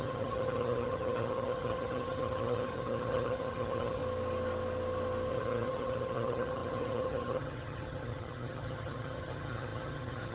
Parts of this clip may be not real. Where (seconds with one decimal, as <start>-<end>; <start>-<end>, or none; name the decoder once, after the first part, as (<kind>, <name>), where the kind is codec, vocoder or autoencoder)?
0.0-4.0 (vocoder, HiFi-GAN); 5.3-10.3

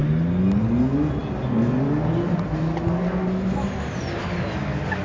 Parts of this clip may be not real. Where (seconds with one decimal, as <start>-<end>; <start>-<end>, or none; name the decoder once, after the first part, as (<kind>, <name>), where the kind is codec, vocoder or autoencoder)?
none

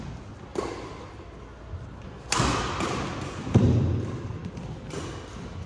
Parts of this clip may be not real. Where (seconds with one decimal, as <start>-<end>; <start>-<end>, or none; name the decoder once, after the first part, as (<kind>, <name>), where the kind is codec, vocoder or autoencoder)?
none

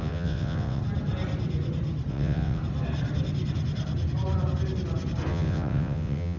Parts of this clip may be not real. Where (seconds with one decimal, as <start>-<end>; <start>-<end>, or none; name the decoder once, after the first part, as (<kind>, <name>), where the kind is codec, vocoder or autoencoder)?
0.0-0.8 (vocoder, WaveNeXt); 2.1-2.6; 5.3-6.4

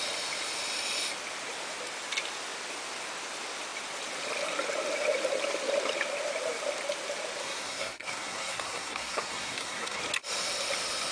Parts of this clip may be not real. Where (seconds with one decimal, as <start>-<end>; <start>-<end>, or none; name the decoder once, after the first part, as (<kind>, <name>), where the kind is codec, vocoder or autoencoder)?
7.4-10.0 (codec, SNAC)

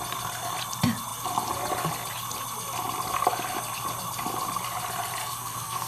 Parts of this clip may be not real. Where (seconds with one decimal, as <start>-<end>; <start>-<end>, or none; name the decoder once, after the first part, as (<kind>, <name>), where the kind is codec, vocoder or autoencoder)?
5.2-5.9 (codec, SNAC)

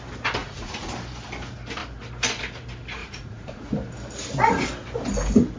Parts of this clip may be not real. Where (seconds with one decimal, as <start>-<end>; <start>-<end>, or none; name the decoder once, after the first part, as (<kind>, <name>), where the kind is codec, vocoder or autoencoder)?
0.4-0.9 (vocoder, Vocos); 3.0-3.7